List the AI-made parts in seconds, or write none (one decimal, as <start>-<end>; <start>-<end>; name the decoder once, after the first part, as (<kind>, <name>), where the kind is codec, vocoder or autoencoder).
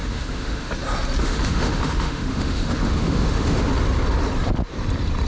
0.0-0.7 (autoencoder, DAC-VAE); 1.2-3.7